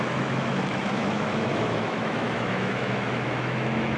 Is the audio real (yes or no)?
no